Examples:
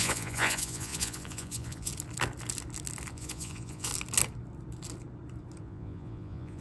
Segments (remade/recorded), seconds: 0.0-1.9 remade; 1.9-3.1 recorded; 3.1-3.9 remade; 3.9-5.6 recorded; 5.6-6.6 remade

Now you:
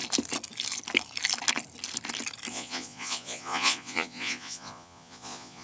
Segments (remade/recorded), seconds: 0.0-2.5 recorded; 2.5-5.6 remade

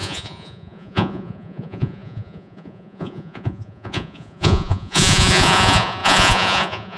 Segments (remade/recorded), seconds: 0.0-7.0 remade